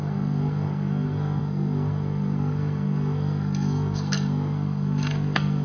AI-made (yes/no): yes